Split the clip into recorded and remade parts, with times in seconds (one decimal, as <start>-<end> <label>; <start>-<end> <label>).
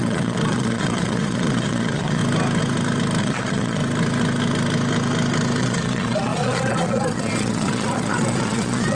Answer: 0.0-2.2 remade; 2.2-3.2 recorded; 3.2-3.8 remade; 3.8-5.6 recorded; 5.6-8.9 remade